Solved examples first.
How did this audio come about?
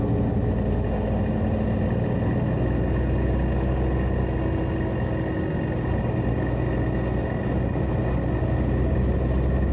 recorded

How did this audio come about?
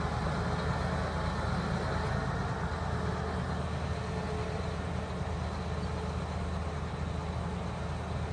recorded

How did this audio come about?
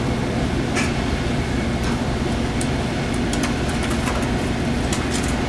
recorded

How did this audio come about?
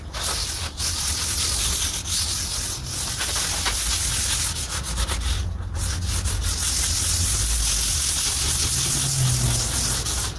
recorded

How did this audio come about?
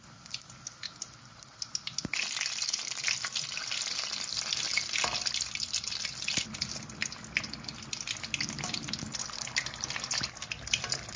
recorded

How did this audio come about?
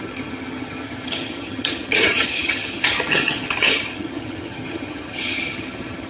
remade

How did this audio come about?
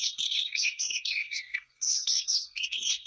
remade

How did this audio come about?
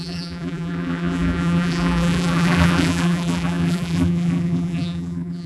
remade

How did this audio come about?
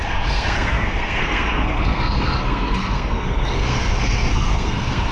remade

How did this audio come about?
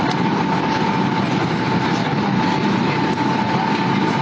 remade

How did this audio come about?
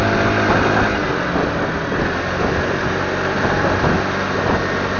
recorded